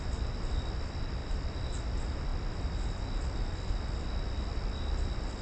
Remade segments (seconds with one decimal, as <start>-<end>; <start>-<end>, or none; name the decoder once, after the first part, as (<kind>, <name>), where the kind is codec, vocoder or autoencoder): 1.2-1.8 (vocoder, BigVGAN v2)